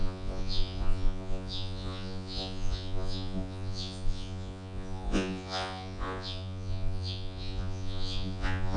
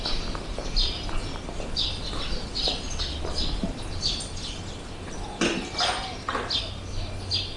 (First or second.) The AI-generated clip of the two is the first